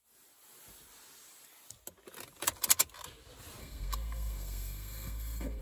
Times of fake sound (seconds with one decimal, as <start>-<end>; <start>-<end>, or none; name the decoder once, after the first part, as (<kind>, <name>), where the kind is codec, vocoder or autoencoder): 3.6-5.6 (codec, SNAC)